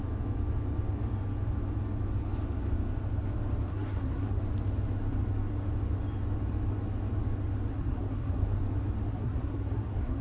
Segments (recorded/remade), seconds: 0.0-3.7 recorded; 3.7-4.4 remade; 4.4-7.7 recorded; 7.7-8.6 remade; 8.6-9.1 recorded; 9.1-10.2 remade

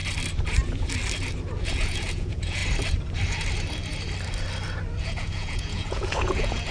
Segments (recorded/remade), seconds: 0.0-1.6 recorded; 1.6-2.6 remade; 2.6-5.0 recorded; 5.0-6.7 remade

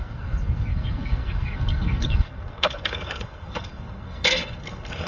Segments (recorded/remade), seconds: 0.0-5.1 remade

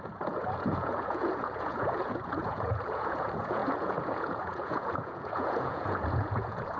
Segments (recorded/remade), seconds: 0.0-6.8 remade

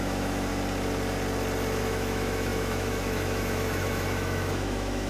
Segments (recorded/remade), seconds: 0.0-0.5 remade; 0.5-1.8 recorded; 1.8-5.1 remade

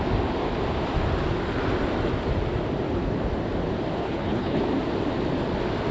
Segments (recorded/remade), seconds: 0.0-4.0 recorded; 4.0-4.6 remade; 4.6-5.9 recorded

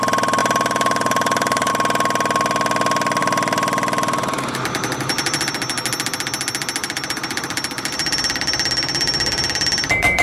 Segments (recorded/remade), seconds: 0.0-0.4 recorded; 0.4-1.7 remade; 1.7-3.2 recorded; 3.2-5.5 remade; 5.5-6.8 recorded; 6.8-10.2 remade